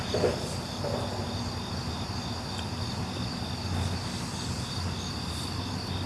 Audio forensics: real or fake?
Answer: real